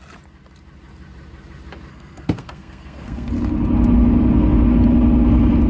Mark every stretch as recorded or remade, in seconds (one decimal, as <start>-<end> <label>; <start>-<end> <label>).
0.0-1.9 recorded; 1.9-3.3 remade; 3.3-5.7 recorded